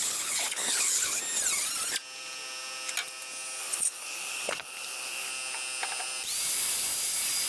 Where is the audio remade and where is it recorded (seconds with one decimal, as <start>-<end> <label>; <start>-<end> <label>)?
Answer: 0.0-1.2 remade; 1.2-3.6 recorded; 3.6-5.3 remade; 5.3-7.5 recorded